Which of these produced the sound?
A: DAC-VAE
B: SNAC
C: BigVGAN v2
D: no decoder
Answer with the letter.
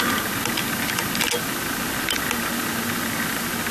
D